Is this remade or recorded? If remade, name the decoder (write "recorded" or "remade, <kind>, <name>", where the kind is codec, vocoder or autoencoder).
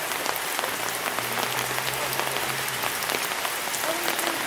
recorded